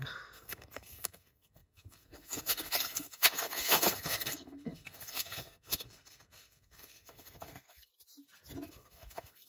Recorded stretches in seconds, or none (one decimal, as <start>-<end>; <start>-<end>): 7.9-8.7